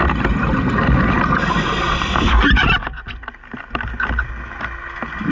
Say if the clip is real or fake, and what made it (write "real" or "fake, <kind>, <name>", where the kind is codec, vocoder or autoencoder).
real